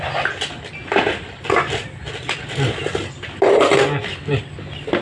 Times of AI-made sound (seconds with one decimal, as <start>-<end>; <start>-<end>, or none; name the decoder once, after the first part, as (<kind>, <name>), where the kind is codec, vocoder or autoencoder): none